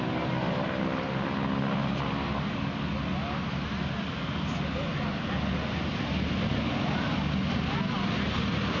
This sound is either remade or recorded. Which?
recorded